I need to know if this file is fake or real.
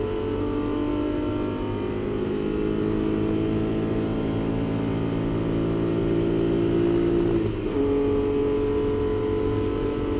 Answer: real